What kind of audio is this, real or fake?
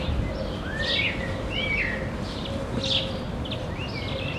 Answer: real